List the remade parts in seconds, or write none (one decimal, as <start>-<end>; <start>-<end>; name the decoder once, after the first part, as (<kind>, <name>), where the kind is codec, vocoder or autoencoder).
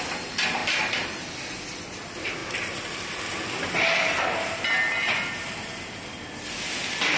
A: none